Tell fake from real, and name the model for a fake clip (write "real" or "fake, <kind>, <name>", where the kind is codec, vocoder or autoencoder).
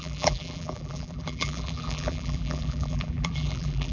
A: fake, vocoder, BigVGAN v2